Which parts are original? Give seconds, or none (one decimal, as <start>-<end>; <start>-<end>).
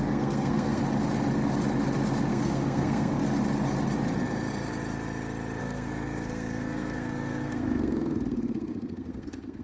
0.8-2.3; 3.2-5.6